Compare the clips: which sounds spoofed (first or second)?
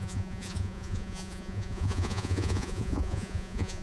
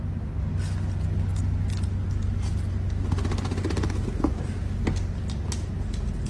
first